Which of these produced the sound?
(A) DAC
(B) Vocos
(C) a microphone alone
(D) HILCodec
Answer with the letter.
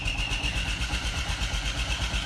B